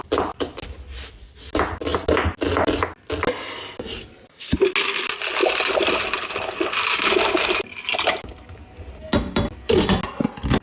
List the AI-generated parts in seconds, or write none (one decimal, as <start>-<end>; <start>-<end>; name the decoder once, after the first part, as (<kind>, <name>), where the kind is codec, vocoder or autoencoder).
none

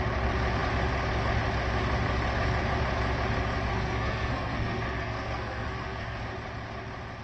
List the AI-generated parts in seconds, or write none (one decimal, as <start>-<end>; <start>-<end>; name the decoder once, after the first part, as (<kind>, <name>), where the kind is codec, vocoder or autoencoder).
3.7-6.2 (codec, SNAC)

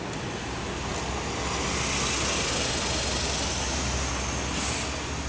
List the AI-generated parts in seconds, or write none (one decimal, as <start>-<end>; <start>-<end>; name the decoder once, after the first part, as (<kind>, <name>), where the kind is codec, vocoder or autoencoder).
none